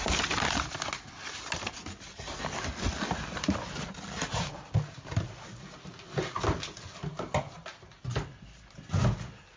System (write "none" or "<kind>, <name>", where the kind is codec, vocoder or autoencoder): none